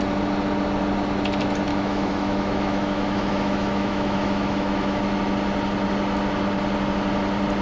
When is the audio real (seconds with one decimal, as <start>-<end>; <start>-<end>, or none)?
0.0-1.7; 5.0-7.6

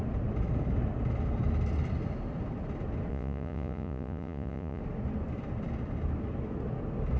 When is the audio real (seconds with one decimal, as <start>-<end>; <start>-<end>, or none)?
0.0-3.1; 4.8-7.2

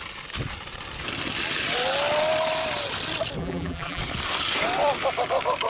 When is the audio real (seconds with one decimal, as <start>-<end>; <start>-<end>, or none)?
0.0-3.4; 4.0-5.7

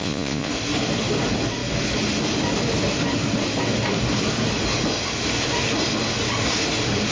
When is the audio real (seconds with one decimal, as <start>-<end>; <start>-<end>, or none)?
0.5-7.1

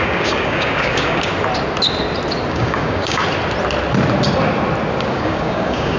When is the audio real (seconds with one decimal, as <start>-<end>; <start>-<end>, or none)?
1.3-2.5; 3.2-5.1

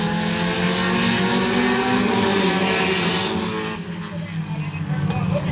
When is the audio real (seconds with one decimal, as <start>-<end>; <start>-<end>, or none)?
0.0-5.5